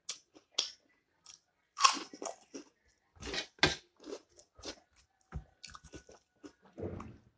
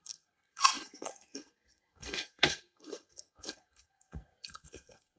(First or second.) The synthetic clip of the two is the second